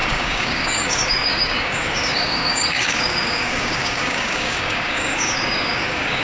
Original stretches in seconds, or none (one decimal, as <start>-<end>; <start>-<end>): none